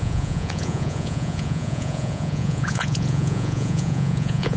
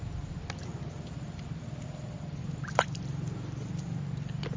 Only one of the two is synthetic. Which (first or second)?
first